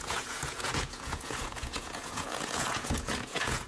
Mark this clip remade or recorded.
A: remade